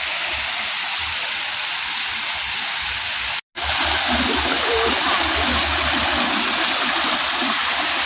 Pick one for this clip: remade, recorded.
recorded